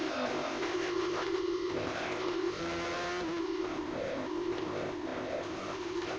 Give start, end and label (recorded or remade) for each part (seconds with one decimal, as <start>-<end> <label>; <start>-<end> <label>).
0.0-2.6 remade; 2.6-3.4 recorded; 3.4-6.2 remade